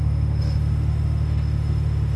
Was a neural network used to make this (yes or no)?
yes